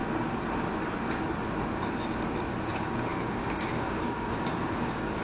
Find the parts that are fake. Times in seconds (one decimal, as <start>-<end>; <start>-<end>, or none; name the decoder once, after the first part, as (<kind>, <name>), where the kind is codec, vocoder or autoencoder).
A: 2.7-5.2 (codec, DAC)